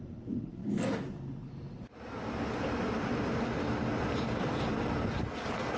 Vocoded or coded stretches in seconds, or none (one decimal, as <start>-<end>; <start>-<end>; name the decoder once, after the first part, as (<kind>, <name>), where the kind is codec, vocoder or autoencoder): none